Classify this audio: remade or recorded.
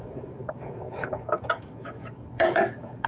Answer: remade